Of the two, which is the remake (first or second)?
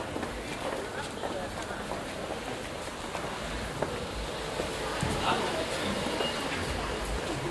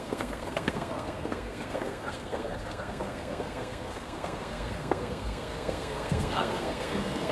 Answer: second